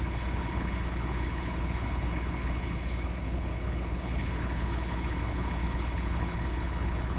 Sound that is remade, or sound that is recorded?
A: remade